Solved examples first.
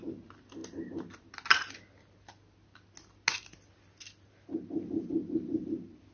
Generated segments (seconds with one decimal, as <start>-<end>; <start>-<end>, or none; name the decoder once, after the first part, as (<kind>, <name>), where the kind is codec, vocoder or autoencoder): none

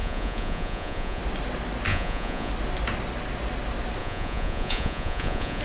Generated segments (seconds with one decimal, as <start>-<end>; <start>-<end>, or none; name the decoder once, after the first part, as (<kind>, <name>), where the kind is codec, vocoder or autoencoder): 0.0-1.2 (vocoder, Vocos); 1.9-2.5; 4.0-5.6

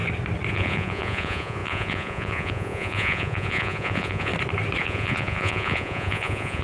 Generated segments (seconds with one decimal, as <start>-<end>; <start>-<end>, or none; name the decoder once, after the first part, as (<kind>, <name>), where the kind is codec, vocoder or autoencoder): 0.5-4.3 (vocoder, Vocos); 4.8-6.6

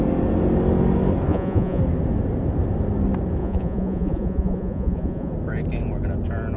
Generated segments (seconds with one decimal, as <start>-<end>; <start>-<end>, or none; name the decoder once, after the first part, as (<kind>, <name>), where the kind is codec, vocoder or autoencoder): 1.3-1.8 (vocoder, Vocos); 3.4-5.3

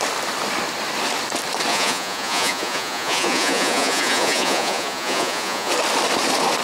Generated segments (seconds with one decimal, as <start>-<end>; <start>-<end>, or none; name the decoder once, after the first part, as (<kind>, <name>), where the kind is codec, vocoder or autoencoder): 1.7-5.7 (vocoder, Vocos)

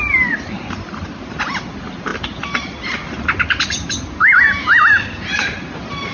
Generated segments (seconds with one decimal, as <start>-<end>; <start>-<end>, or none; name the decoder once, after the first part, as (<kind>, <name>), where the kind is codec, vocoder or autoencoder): none